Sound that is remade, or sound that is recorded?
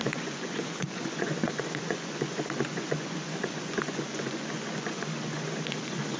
remade